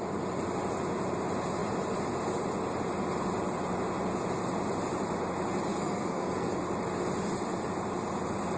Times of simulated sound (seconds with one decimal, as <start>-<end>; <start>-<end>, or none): 5.7-6.5